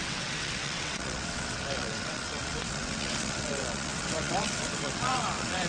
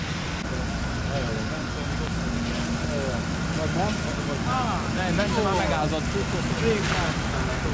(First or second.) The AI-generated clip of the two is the first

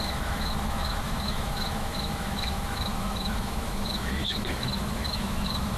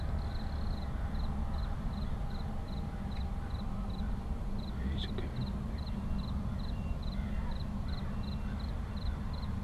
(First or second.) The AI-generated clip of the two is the first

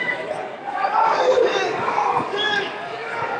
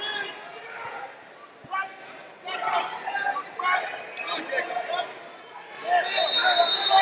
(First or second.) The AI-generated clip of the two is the first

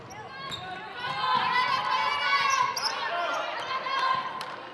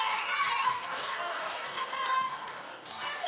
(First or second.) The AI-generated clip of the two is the second